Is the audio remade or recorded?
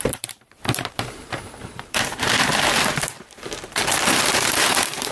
remade